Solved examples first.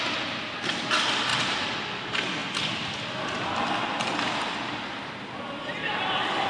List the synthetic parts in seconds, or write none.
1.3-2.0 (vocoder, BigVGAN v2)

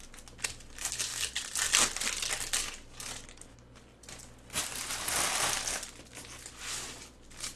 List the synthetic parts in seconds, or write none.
none

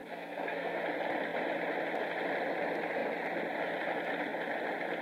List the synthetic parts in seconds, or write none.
0.0-0.8 (codec, SNAC)

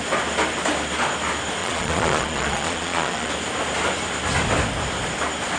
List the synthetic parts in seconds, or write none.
1.6-3.3 (vocoder, Vocos)

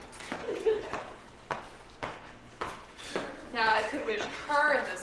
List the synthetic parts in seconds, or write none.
0.4-1.6 (codec, HILCodec); 2.0-3.1; 3.7-4.5

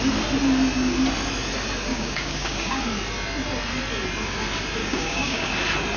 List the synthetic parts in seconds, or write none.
1.9-2.8 (codec, DAC); 4.8-5.5

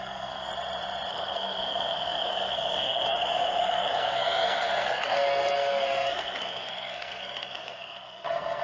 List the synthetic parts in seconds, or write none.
0.0-0.5 (codec, SNAC); 1.1-8.6

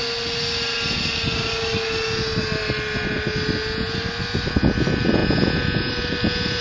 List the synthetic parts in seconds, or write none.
none